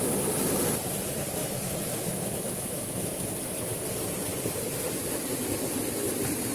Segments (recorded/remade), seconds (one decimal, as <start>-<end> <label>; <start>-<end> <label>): 0.0-1.4 recorded; 1.4-3.3 remade; 3.3-6.5 recorded